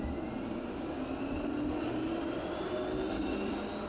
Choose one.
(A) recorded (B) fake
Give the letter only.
A